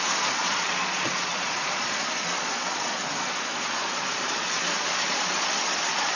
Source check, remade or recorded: remade